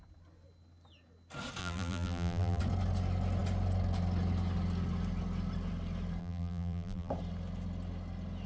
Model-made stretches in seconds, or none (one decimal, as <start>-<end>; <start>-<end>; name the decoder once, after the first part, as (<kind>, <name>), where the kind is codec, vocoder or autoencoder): 1.6-2.6 (vocoder, BigVGAN v2); 6.2-7.1